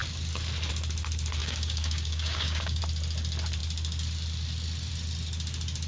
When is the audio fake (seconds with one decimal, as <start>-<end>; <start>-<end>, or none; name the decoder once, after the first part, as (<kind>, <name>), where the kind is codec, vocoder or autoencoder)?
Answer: 1.4-2.8 (codec, DAC)